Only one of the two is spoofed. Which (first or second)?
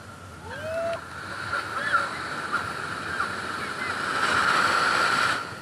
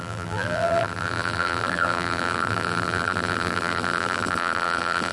second